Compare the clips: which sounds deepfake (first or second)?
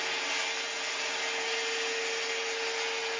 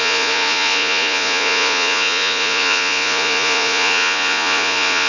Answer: second